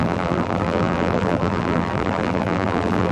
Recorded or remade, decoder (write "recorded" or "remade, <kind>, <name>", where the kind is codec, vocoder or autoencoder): remade, vocoder, BigVGAN v2